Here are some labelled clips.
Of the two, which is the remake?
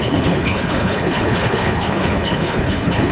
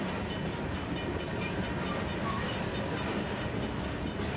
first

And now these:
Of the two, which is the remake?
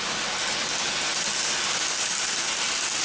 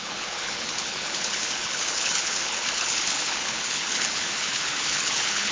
second